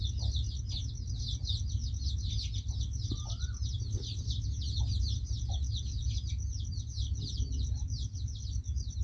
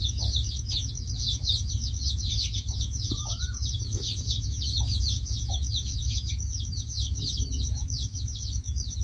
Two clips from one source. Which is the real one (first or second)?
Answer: first